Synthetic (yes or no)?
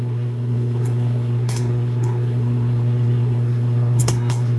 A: yes